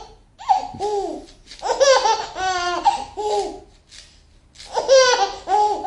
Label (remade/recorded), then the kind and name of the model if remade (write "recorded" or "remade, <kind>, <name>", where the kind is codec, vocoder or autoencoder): recorded